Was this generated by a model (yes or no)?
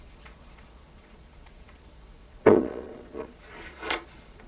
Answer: yes